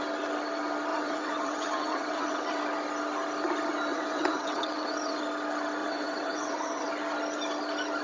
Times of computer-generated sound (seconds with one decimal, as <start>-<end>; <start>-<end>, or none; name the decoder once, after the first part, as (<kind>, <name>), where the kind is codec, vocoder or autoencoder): 0.9-2.6 (vocoder, WaveNeXt); 3.9-5.2; 5.8-6.9